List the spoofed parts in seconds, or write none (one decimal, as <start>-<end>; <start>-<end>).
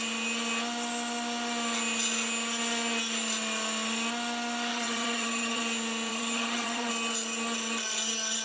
4.7-5.6; 6.1-6.9